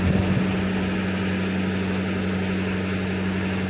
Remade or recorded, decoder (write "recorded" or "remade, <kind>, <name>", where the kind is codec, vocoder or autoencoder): recorded